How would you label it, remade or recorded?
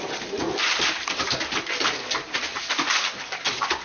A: recorded